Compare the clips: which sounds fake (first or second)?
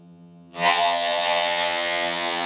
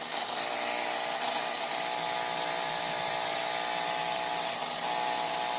first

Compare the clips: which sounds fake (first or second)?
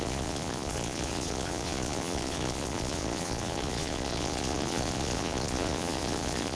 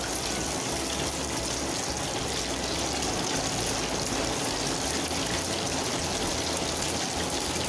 first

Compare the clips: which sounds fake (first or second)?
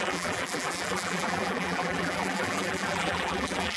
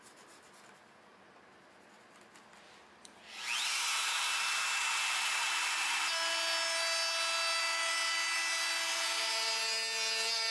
first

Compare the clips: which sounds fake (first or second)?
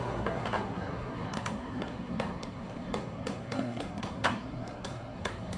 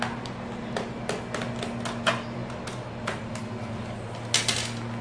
first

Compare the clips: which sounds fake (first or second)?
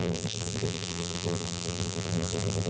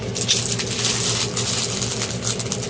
first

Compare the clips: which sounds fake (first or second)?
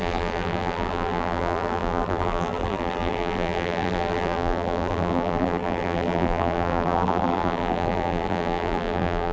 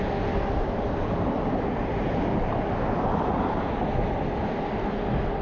first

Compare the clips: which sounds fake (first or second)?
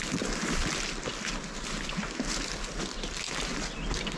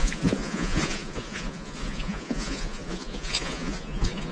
second